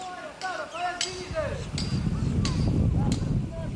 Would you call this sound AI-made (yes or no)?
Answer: no